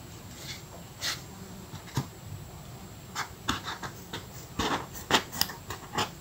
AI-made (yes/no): no